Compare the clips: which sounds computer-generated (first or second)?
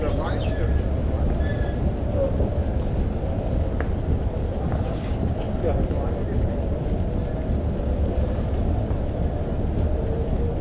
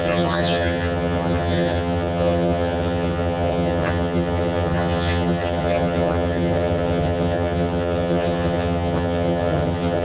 second